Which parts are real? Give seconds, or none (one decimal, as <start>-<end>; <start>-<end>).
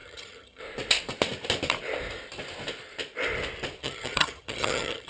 0.6-3.8